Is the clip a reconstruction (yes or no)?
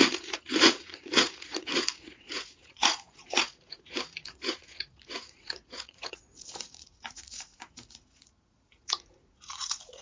yes